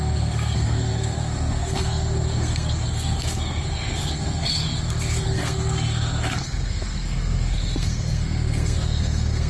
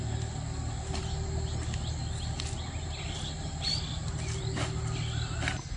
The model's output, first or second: first